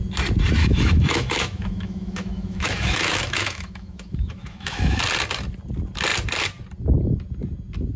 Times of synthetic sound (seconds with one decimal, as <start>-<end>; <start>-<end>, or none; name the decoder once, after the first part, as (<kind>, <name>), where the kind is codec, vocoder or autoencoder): 0.6-5.0 (autoencoder, DAC-VAE)